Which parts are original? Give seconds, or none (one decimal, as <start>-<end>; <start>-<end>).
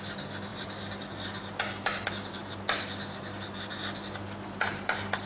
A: 0.0-5.3